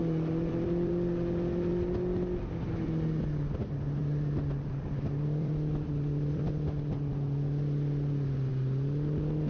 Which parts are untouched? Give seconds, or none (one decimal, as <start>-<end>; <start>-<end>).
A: 0.9-4.0; 7.1-9.5